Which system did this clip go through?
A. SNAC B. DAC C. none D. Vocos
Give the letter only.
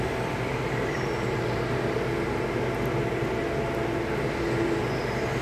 C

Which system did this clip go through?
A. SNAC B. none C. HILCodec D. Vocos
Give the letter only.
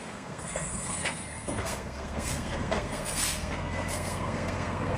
A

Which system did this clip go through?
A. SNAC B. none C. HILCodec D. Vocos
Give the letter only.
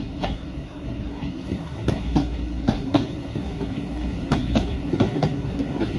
A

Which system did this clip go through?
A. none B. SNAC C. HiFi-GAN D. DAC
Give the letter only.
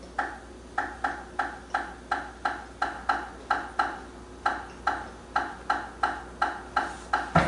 A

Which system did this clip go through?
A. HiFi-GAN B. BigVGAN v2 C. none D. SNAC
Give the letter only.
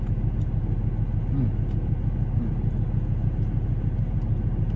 C